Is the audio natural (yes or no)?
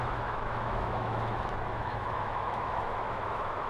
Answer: no